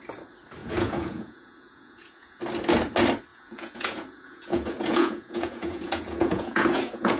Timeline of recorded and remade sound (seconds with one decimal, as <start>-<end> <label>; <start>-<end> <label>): 0.0-0.6 recorded; 0.6-2.4 remade; 2.4-3.3 recorded; 3.3-7.2 remade